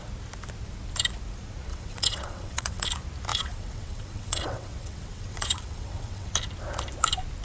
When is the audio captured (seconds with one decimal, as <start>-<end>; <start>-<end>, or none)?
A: 0.0-1.7; 2.8-3.3; 6.3-7.4